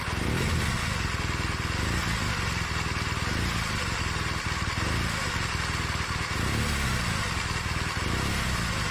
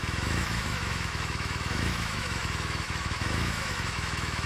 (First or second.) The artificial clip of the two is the second